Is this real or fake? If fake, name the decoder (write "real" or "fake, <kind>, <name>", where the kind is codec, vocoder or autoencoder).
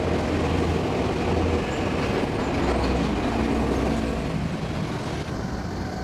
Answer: real